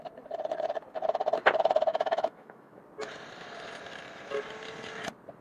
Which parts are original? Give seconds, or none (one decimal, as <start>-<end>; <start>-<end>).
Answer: 0.0-1.9; 2.8-5.4